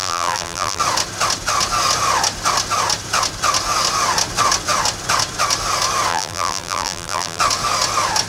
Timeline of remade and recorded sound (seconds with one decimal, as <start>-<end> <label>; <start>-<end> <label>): 0.0-0.8 remade; 0.8-6.1 recorded; 6.1-7.4 remade; 7.4-8.3 recorded